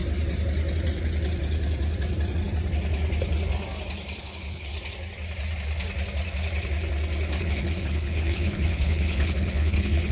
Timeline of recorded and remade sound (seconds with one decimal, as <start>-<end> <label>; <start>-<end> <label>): 0.0-4.2 recorded; 4.2-4.7 remade; 4.7-7.4 recorded; 7.4-10.1 remade